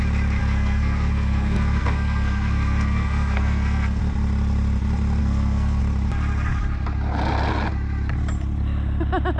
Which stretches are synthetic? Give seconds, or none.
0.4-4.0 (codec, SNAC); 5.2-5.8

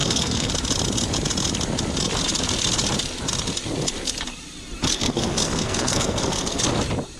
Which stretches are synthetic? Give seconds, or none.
0.0-0.5 (codec, SNAC); 4.9-6.6

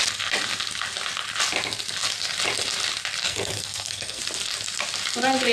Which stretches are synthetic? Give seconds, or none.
3.2-4.2 (codec, SNAC)

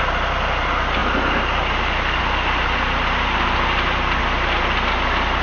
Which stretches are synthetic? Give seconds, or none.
none

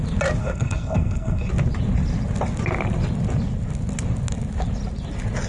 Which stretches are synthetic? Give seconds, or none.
0.4-1.5 (codec, SNAC)

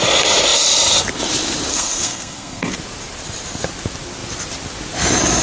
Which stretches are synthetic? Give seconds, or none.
1.7-2.7 (codec, SNAC)

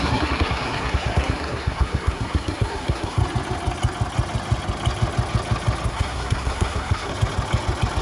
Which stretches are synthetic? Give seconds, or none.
0.0-3.2 (codec, SNAC); 5.9-7.1

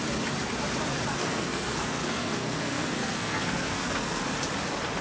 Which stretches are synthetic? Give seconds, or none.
1.2-4.2 (codec, SNAC)